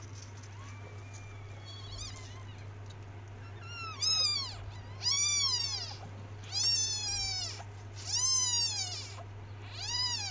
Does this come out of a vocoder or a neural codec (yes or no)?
no